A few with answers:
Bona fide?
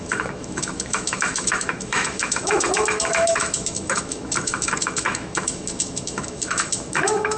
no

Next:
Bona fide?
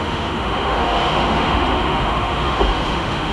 no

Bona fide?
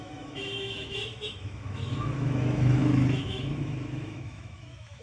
no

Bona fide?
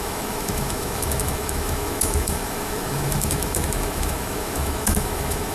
no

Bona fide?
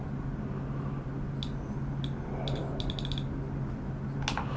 yes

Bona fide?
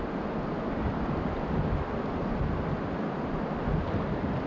yes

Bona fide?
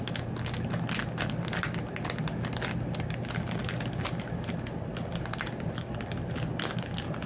yes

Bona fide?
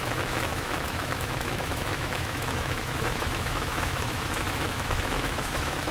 no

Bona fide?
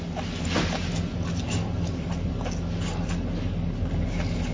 yes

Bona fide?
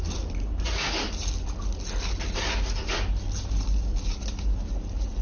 yes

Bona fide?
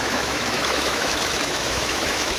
no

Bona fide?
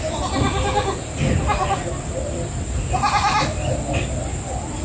yes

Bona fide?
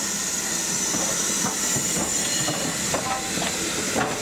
yes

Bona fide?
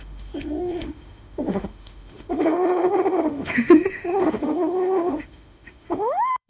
no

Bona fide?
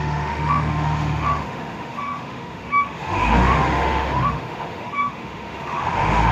no